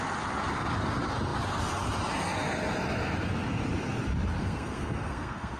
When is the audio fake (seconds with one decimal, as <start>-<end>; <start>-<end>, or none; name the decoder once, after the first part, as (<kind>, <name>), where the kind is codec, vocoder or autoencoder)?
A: 4.4-5.6 (codec, SNAC)